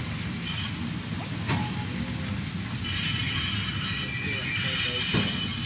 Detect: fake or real real